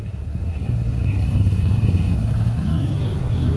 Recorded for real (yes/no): no